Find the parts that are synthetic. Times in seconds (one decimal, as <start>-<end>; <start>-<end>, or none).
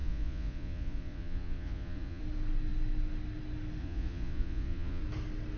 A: 0.0-2.2; 3.8-5.0